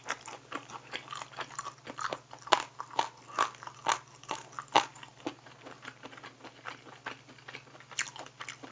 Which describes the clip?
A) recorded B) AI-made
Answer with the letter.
A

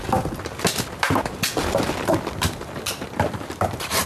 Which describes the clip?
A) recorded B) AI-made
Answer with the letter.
A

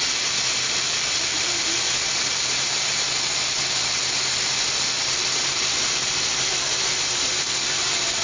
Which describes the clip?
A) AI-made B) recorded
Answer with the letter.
A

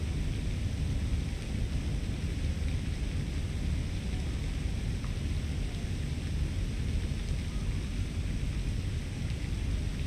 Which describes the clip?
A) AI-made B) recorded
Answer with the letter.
B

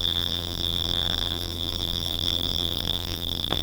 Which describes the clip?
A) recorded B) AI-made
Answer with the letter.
B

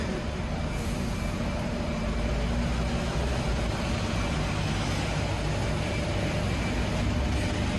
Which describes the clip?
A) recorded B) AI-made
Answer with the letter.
A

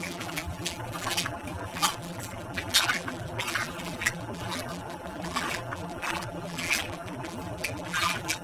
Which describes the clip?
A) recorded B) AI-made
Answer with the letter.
B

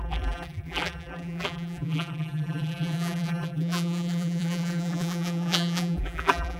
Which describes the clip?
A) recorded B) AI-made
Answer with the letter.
B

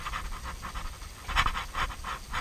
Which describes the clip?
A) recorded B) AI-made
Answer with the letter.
A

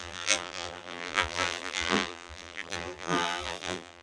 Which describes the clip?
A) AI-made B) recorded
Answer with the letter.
A